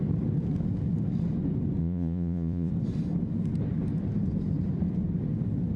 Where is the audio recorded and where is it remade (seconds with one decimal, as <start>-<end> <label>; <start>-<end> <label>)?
0.0-1.8 recorded; 1.8-2.7 remade; 2.7-5.8 recorded